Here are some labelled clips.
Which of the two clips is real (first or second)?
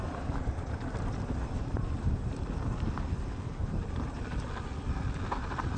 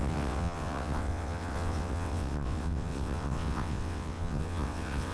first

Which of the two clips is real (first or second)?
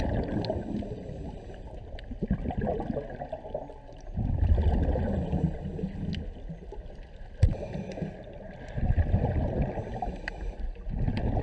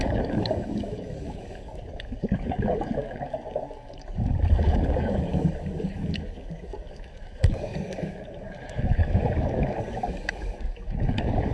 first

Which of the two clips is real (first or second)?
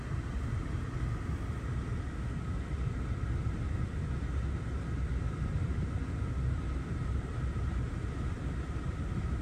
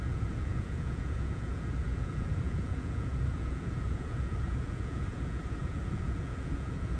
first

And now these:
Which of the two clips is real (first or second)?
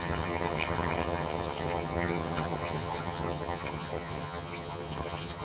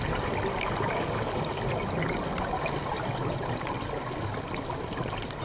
second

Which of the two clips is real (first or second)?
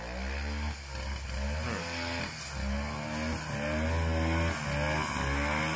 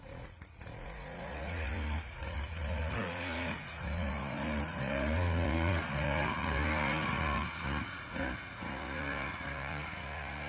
first